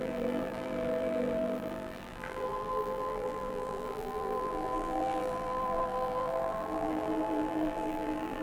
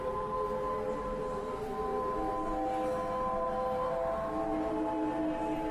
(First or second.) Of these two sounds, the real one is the second